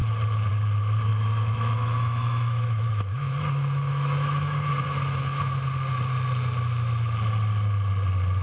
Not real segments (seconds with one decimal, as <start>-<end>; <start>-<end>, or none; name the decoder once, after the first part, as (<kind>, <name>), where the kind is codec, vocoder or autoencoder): 1.1-4.7 (autoencoder, DAC-VAE)